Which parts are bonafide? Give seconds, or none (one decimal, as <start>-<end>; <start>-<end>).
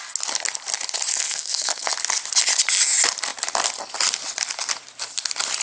0.0-1.1; 1.9-5.6